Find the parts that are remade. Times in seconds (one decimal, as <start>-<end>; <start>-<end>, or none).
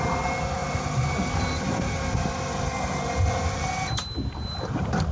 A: none